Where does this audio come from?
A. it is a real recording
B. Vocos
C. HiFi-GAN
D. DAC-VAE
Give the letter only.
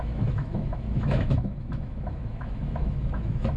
D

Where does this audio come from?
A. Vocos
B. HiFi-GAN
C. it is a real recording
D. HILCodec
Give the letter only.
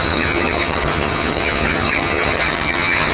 B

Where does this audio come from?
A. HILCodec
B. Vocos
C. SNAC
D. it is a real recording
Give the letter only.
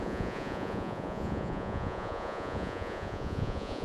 B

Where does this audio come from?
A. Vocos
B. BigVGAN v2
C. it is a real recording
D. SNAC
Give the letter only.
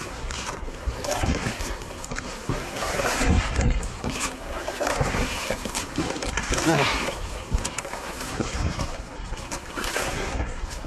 D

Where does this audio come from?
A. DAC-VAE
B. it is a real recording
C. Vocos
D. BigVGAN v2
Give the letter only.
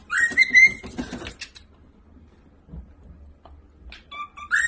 B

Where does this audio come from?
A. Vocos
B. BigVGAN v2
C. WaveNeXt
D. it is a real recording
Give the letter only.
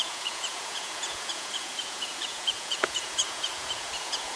A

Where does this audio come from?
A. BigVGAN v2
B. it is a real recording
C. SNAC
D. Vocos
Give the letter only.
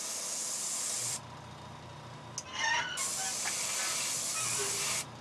B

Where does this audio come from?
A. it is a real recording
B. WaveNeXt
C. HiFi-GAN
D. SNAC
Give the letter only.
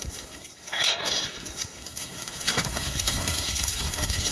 D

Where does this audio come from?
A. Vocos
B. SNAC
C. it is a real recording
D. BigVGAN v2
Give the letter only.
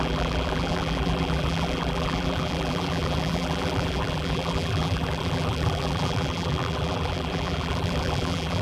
D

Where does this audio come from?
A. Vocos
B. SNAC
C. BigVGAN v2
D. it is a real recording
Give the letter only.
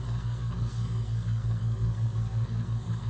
B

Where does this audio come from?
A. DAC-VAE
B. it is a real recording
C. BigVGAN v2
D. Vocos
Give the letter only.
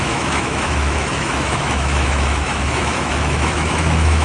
A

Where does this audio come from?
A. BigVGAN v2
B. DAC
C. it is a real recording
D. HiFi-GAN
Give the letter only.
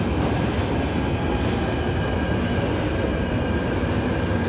C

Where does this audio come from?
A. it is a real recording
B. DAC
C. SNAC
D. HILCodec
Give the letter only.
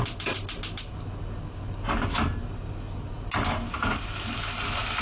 A